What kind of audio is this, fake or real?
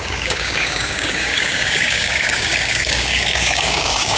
fake